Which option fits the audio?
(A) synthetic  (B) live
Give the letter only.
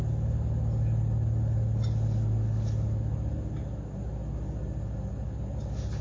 B